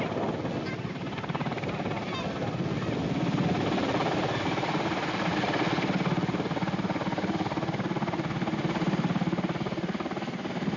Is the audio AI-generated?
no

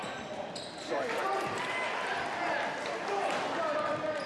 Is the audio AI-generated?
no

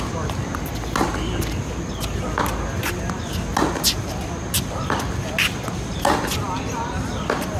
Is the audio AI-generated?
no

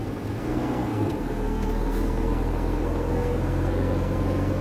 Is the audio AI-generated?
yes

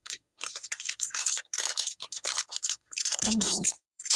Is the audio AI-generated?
yes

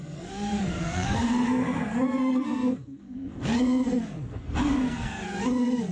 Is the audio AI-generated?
yes